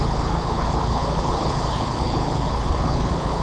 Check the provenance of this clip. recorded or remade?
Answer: remade